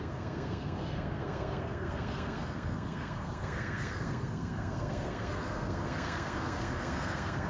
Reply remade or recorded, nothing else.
remade